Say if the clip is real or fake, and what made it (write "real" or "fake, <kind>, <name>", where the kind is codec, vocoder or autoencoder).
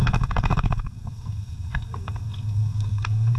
fake, codec, SNAC